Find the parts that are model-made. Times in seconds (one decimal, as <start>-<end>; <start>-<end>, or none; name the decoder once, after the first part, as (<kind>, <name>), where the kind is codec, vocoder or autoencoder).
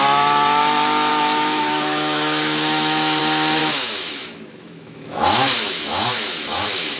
1.1-3.2 (autoencoder, DAC-VAE); 3.6-7.0